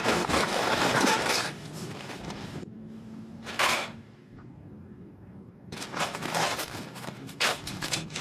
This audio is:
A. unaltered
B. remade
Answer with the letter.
B